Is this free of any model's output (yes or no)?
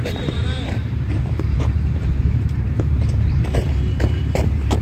no